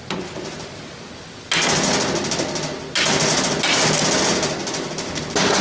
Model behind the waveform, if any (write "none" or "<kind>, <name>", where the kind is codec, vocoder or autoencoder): none